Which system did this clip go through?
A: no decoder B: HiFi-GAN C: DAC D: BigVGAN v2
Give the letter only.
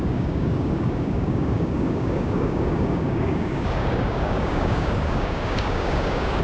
C